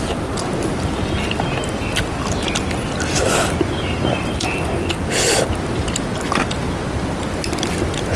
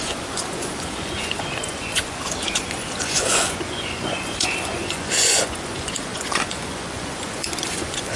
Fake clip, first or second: second